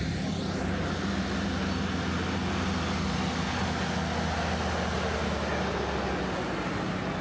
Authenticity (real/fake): real